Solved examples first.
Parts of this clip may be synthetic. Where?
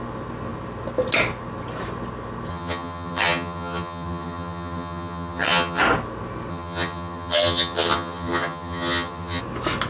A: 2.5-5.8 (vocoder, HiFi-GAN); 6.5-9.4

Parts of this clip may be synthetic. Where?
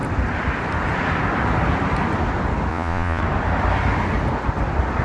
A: 2.7-3.2 (vocoder, Vocos)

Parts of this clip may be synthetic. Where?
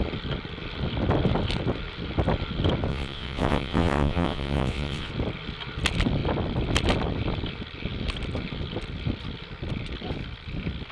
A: 2.9-5.1 (vocoder, WaveNeXt)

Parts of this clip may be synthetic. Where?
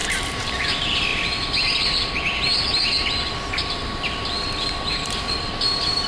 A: 0.0-1.1 (vocoder, BigVGAN v2); 3.5-3.9; 4.9-6.1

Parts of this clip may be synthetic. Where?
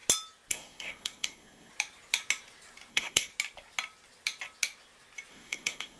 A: 0.5-1.7 (codec, SNAC); 2.9-3.3; 5.3-6.0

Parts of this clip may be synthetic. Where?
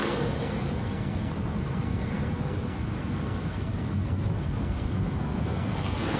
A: 0.0-6.2 (codec, SNAC)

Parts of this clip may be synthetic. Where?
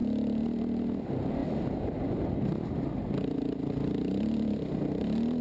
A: none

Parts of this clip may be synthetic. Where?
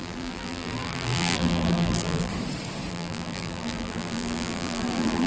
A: 0.0-2.3 (vocoder, BigVGAN v2); 2.9-5.3